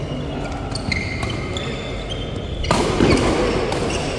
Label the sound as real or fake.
real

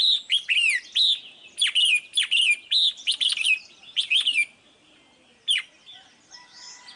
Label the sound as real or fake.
real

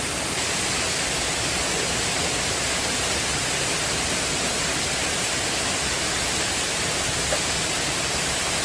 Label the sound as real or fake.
real